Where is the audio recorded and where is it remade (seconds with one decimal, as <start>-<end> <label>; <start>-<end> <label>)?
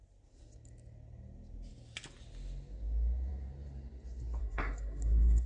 0.0-4.4 recorded; 4.4-5.5 remade